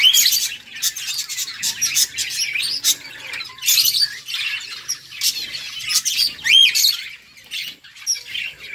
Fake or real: real